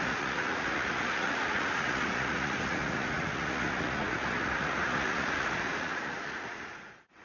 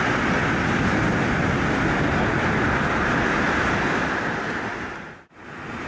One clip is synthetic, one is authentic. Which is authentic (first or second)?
second